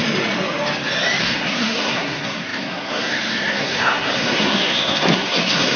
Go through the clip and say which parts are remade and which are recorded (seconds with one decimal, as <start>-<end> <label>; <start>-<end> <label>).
0.0-1.2 recorded; 1.2-5.8 remade